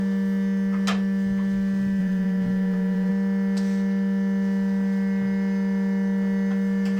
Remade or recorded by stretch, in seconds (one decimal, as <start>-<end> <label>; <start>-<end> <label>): 0.0-2.0 recorded; 2.0-3.1 remade; 3.1-7.0 recorded